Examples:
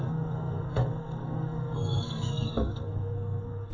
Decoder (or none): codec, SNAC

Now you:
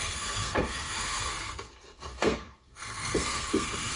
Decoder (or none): codec, SNAC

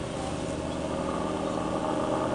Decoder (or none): none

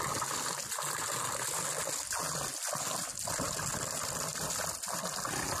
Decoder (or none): none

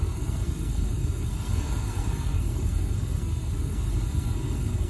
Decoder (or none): codec, SNAC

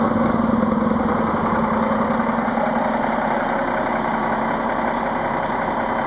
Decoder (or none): none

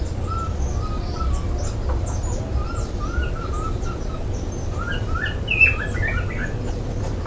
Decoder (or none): none